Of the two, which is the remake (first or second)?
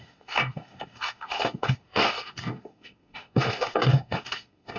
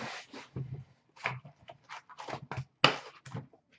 first